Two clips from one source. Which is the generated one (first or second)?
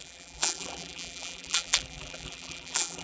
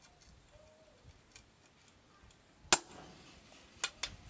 first